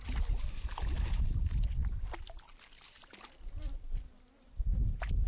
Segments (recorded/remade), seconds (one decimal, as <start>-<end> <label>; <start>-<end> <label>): 0.0-5.3 recorded